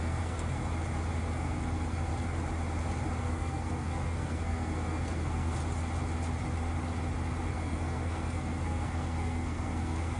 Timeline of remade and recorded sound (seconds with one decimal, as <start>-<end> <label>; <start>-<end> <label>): 0.0-0.7 remade; 0.7-1.4 recorded; 1.4-2.1 remade; 2.1-3.2 recorded; 3.2-5.6 remade; 5.6-7.5 recorded; 7.5-10.2 remade